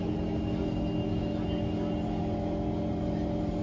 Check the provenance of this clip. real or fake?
real